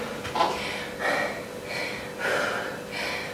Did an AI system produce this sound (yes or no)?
no